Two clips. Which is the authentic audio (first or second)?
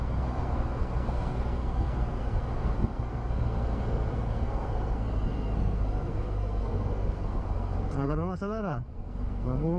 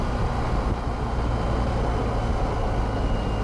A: second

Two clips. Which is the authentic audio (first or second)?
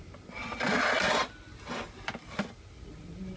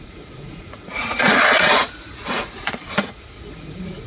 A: first